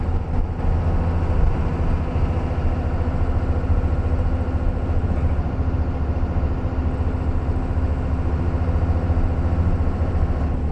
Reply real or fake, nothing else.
real